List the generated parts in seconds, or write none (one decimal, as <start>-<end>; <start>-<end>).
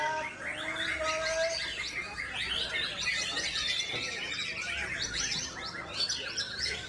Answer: none